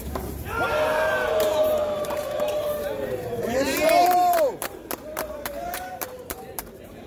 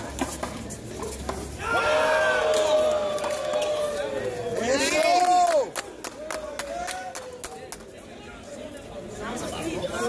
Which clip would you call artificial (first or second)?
first